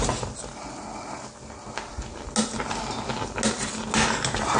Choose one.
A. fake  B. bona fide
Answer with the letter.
B